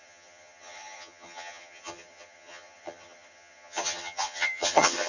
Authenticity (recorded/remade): remade